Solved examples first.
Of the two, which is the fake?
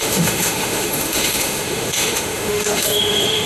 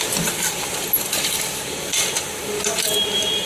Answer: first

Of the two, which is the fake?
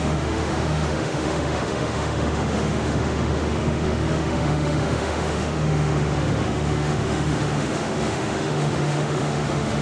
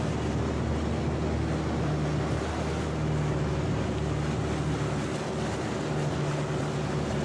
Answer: first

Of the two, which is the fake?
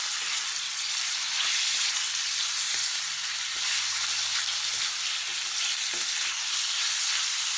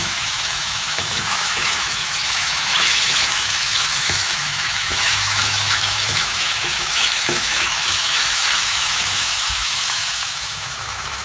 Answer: second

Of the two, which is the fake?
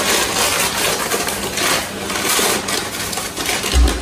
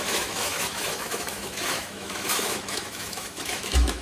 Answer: second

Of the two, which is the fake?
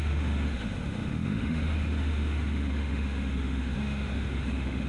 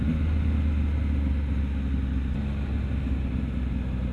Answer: first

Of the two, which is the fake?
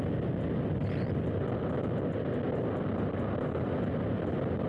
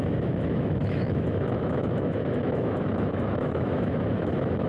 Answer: second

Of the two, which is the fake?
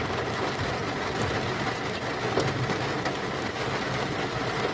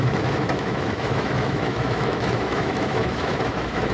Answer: second